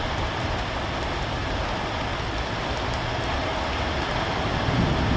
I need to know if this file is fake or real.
real